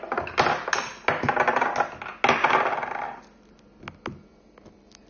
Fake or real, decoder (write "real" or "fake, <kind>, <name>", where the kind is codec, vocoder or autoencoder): real